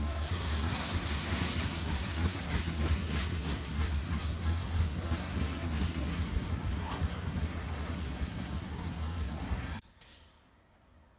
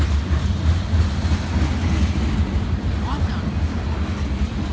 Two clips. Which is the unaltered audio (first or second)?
second